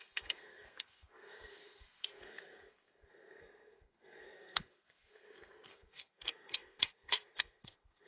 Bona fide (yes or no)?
no